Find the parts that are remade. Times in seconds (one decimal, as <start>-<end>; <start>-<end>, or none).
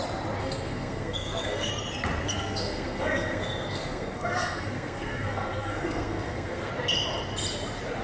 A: 0.4-1.7; 2.3-6.7